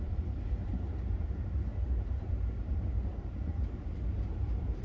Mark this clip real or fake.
fake